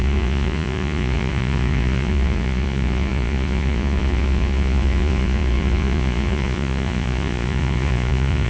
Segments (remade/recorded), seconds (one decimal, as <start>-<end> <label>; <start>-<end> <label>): 0.0-8.5 remade